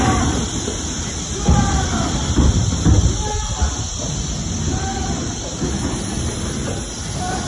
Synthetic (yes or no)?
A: no